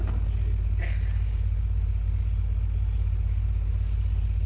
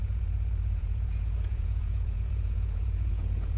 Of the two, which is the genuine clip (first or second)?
first